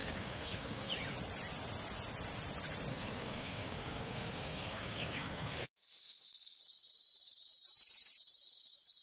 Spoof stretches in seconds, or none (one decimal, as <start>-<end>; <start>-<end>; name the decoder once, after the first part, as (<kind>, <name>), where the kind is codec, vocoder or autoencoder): 0.0-0.9 (codec, SNAC); 2.9-6.6